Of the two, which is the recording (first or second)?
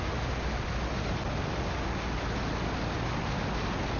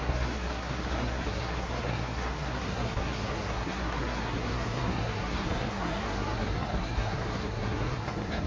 first